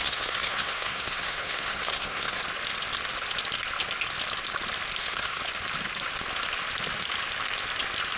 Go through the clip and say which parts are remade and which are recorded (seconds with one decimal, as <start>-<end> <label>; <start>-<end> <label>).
0.0-2.4 remade; 2.4-5.0 recorded; 5.0-5.4 remade; 5.4-8.2 recorded